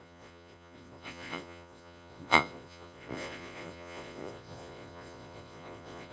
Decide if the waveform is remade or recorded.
remade